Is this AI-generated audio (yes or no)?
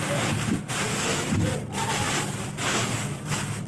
no